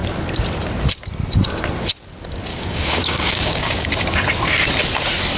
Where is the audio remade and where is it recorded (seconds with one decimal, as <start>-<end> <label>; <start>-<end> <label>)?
0.0-2.5 recorded; 2.5-3.9 remade; 3.9-5.4 recorded